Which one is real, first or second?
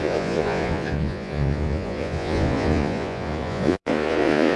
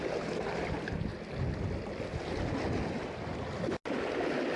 second